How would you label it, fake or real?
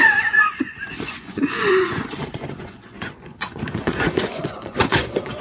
fake